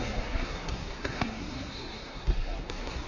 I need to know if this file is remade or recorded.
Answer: remade